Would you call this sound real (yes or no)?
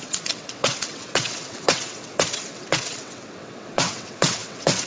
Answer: no